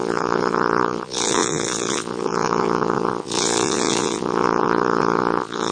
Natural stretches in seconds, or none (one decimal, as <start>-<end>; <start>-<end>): none

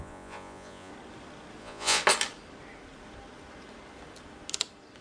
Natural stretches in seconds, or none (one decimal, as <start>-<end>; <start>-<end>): 0.9-1.6; 2.0-5.0

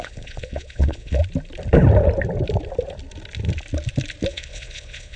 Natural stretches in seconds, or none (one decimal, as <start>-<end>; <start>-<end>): 1.2-4.3

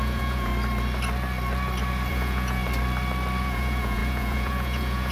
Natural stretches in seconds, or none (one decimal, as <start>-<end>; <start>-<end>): 0.5-2.1; 2.6-3.4

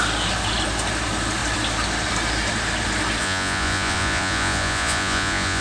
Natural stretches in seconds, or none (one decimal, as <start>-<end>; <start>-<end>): 0.0-3.2

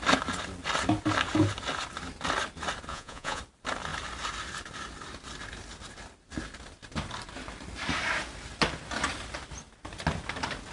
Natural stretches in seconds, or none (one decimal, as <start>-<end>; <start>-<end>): 0.0-2.9; 3.4-10.7

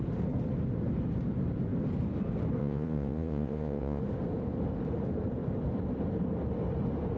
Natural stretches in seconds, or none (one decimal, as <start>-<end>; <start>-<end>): 0.0-2.6; 4.0-7.2